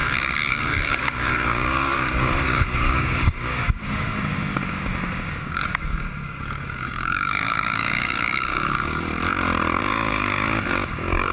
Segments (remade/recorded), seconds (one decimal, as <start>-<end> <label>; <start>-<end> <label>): 0.0-9.1 remade; 9.1-9.8 recorded; 9.8-11.3 remade